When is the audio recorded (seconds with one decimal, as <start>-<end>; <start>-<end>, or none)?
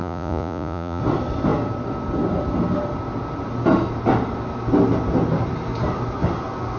1.0-6.8